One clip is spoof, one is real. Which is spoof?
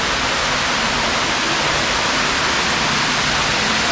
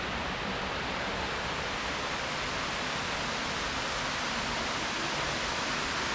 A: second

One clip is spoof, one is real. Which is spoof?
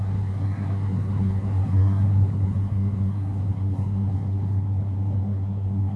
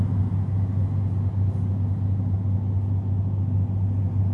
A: first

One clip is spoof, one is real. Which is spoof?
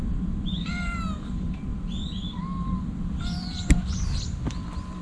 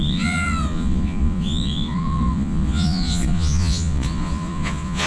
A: second